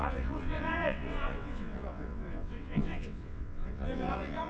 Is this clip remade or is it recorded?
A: remade